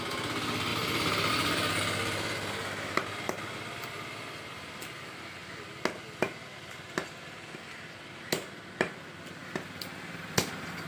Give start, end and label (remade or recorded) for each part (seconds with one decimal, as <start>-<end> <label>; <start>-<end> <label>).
0.0-10.9 recorded